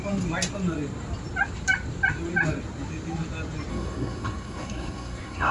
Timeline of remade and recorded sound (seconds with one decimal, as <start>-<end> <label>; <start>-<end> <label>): 0.0-3.7 recorded; 3.7-5.5 remade